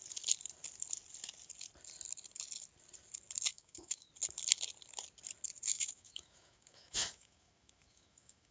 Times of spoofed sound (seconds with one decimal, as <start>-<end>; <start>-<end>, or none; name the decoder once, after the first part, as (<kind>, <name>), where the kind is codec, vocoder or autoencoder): 3.5-4.1 (autoencoder, DAC-VAE); 5.7-8.5